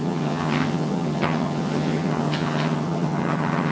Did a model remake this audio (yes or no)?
yes